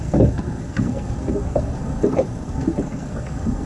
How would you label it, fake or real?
fake